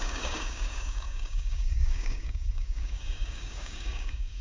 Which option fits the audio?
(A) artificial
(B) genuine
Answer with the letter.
A